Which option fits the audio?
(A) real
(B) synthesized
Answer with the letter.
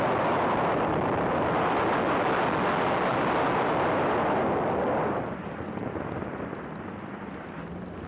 A